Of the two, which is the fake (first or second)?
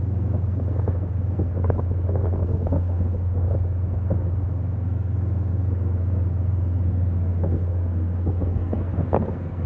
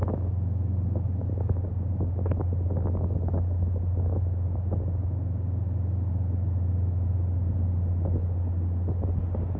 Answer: first